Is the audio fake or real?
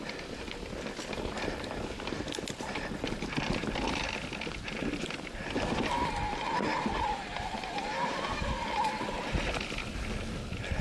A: real